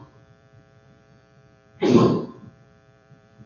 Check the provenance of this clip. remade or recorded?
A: remade